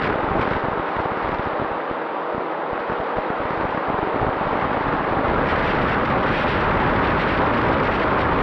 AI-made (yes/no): no